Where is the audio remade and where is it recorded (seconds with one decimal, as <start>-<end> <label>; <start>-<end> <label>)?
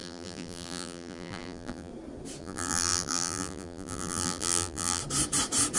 0.0-1.9 remade; 1.9-2.4 recorded; 2.4-5.0 remade; 5.0-5.8 recorded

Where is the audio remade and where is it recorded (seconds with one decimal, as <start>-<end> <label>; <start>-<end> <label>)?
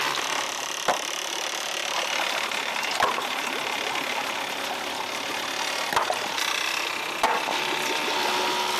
0.0-8.8 recorded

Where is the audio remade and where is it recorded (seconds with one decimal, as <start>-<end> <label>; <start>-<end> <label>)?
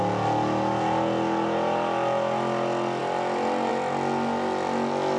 0.0-5.2 recorded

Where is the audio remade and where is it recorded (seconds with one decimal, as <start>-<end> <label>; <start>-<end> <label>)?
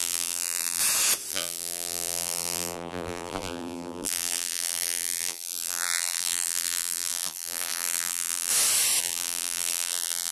0.0-0.8 remade; 0.8-1.3 recorded; 1.3-8.5 remade; 8.5-9.0 recorded; 9.0-10.3 remade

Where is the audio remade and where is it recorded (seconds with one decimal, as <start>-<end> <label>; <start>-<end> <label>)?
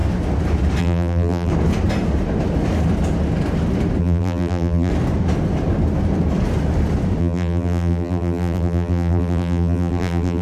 0.0-0.8 recorded; 0.8-1.5 remade; 1.5-4.0 recorded; 4.0-4.9 remade; 4.9-7.2 recorded; 7.2-10.4 remade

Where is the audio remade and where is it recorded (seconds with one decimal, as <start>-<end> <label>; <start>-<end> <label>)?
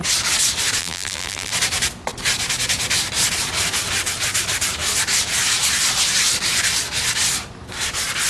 0.0-0.8 recorded; 0.8-1.5 remade; 1.5-8.3 recorded